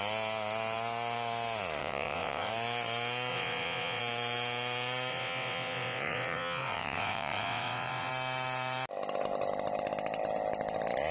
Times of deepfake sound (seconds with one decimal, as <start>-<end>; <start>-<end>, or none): 1.8-2.5; 3.3-4.0; 5.1-8.1